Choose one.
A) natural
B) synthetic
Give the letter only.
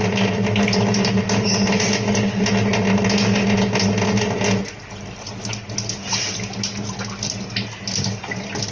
A